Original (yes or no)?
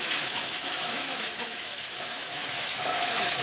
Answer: no